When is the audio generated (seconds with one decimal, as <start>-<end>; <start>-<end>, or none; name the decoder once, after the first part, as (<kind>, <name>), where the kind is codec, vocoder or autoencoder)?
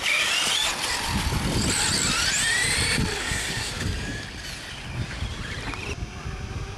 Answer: 3.2-3.7 (codec, SNAC)